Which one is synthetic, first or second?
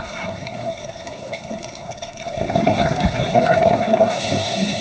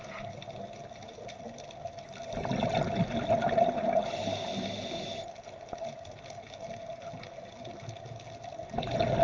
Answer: first